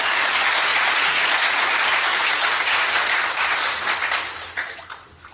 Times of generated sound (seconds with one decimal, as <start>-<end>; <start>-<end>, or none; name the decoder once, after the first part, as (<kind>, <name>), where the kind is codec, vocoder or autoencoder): 0.7-1.6 (vocoder, Vocos)